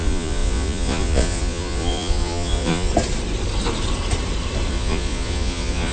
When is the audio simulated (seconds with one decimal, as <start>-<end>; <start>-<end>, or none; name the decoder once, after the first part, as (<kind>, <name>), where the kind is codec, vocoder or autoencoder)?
0.0-2.9 (vocoder, Vocos); 4.7-5.9